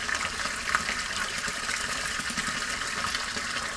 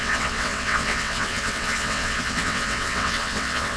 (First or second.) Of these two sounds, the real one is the first